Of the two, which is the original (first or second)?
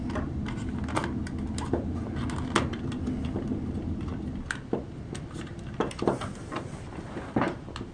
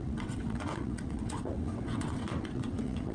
first